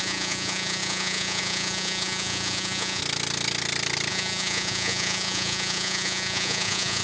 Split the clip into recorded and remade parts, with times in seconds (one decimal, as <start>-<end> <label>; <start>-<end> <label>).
0.0-3.0 remade; 3.0-4.1 recorded; 4.1-7.0 remade